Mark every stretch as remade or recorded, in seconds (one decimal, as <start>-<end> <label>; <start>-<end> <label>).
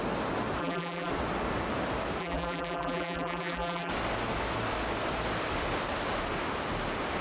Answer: 0.0-0.6 recorded; 0.6-1.1 remade; 1.1-2.2 recorded; 2.2-3.9 remade; 3.9-7.2 recorded